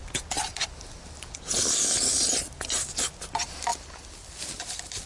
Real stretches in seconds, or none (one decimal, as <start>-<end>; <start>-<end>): 0.0-5.1